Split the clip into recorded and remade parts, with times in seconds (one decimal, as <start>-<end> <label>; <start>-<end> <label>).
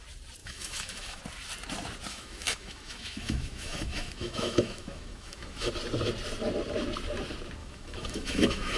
0.0-0.4 recorded; 0.4-1.2 remade; 1.2-2.1 recorded; 2.1-5.7 remade; 5.7-7.6 recorded; 7.6-8.8 remade